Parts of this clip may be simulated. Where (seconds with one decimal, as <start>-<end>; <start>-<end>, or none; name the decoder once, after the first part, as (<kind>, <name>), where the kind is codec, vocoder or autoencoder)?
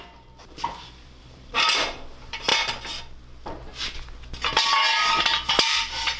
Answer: 0.0-2.5 (vocoder, BigVGAN v2); 5.1-6.2